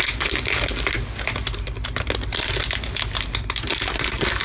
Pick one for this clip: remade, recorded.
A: recorded